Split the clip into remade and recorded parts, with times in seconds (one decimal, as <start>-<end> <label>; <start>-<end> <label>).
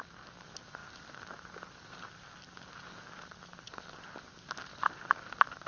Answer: 0.0-5.7 recorded